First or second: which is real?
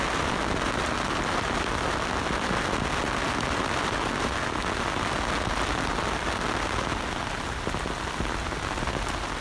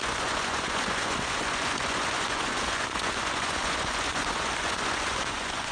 first